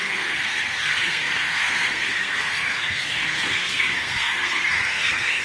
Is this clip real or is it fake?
fake